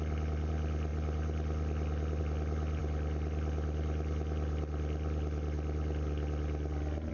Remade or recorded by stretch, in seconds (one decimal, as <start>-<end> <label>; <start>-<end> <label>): 0.0-7.1 recorded